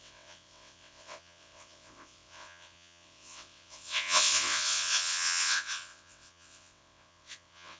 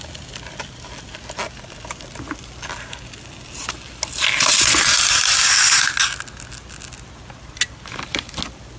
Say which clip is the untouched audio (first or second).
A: second